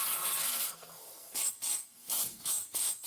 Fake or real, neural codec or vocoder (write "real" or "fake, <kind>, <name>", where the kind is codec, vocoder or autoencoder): fake, codec, SNAC